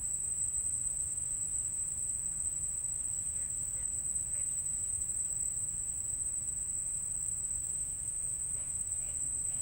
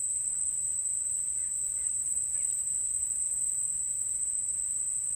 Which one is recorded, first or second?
second